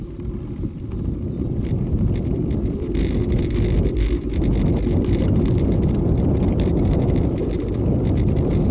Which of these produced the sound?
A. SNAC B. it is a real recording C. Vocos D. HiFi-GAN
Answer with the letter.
B